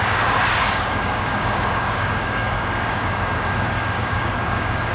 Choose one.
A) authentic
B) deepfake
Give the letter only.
B